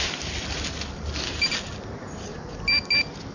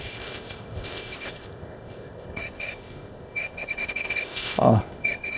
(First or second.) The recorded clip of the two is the first